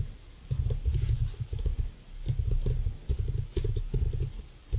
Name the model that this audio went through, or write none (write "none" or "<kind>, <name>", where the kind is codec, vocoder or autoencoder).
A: none